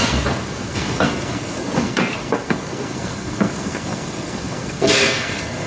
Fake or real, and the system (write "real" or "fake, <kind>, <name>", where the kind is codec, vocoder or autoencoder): fake, codec, SNAC